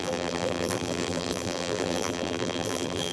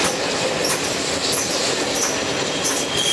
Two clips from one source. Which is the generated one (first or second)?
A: first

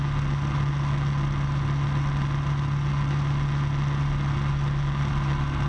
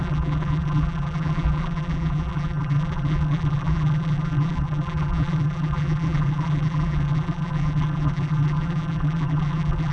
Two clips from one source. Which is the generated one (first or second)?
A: second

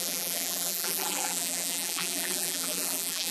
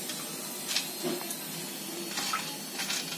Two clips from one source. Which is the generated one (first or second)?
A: first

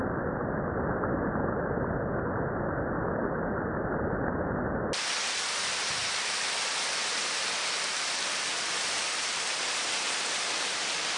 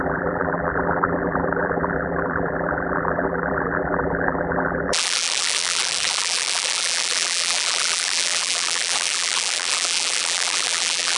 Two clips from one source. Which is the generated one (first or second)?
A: second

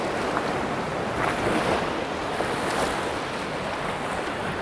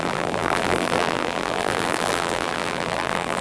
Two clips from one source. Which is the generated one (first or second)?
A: second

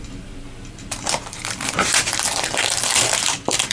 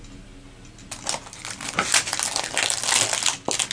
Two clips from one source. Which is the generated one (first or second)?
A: first